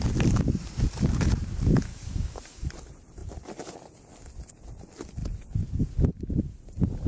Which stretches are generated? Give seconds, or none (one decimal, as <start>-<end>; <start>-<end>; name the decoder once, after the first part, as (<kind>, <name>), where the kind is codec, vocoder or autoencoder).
1.9-2.4 (codec, DAC)